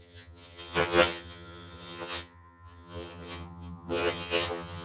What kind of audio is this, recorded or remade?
remade